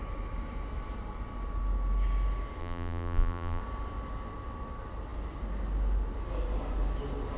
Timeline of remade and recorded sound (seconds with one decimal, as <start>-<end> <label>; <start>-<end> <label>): 0.0-2.6 recorded; 2.6-3.6 remade; 3.6-7.4 recorded